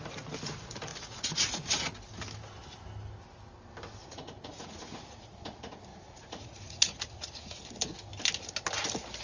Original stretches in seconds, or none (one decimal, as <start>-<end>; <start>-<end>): 0.0-0.9; 1.7-4.0; 5.3-5.9; 7.6-9.2